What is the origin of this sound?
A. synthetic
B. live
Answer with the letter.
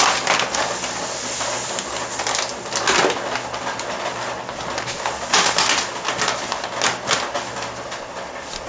B